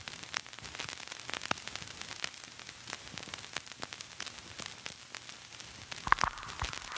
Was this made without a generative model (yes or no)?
yes